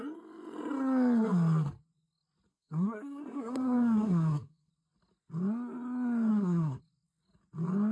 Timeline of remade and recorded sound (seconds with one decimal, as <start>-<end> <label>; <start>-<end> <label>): 0.0-2.5 recorded; 2.5-4.7 remade; 4.7-6.3 recorded; 6.3-6.8 remade; 6.8-7.9 recorded